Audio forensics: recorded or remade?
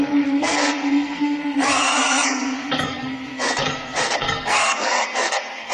remade